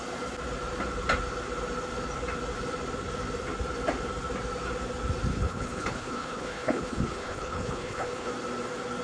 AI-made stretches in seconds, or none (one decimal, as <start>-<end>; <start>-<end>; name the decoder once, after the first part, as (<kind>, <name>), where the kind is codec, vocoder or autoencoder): 5.3-8.3 (codec, HILCodec)